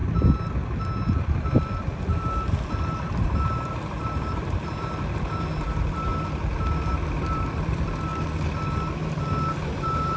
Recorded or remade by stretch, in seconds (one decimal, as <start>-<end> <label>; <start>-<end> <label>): 0.0-6.1 remade; 6.1-7.1 recorded; 7.1-8.1 remade; 8.1-9.5 recorded; 9.5-10.2 remade